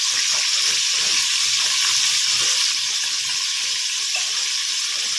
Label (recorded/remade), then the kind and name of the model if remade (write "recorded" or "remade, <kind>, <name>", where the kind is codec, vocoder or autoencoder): recorded